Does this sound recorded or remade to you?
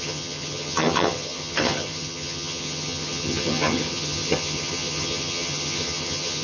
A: remade